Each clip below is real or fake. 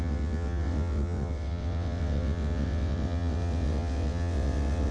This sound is fake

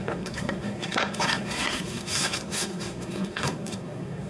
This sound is fake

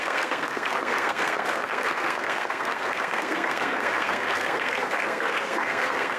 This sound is fake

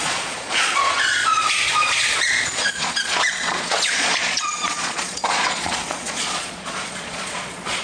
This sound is fake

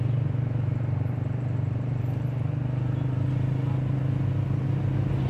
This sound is real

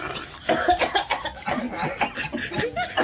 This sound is real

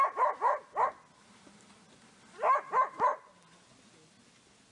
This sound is real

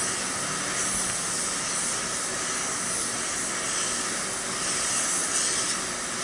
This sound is real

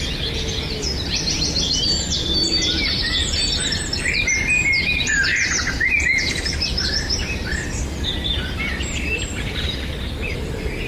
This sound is real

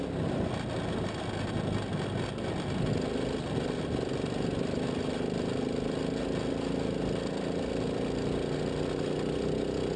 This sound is real